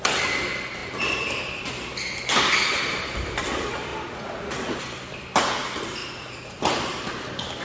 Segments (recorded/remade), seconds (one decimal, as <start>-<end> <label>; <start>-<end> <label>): 0.0-3.9 recorded; 3.9-4.5 remade; 4.5-6.0 recorded; 6.0-6.6 remade; 6.6-7.6 recorded